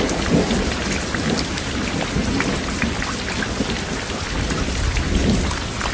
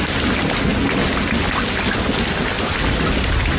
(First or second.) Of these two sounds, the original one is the second